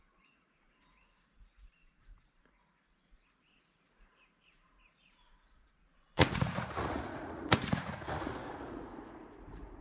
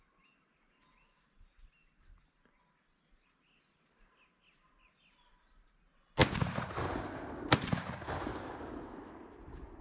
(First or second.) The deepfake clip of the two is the first